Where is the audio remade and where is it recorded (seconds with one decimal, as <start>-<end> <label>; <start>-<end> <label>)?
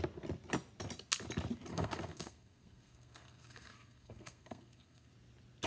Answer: 0.0-1.7 recorded; 1.7-5.1 remade; 5.1-5.7 recorded